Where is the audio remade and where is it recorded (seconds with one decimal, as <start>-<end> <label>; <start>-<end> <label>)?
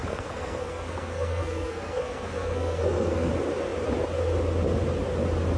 0.0-3.3 remade; 3.3-5.6 recorded